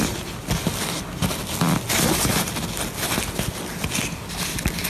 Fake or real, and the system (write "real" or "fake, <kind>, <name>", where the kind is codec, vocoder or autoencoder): real